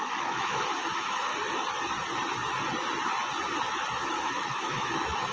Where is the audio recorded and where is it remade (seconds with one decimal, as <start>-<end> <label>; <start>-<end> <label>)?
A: 0.0-1.3 remade; 1.3-4.1 recorded; 4.1-5.3 remade